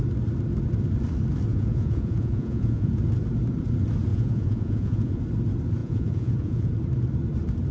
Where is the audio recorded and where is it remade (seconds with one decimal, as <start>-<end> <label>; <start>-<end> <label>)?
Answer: 0.0-1.5 recorded; 1.5-2.9 remade; 2.9-4.1 recorded; 4.1-5.2 remade; 5.2-5.8 recorded; 5.8-6.7 remade; 6.7-7.7 recorded